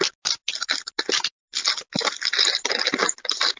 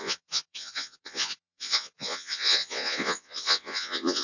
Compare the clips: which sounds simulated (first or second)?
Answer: second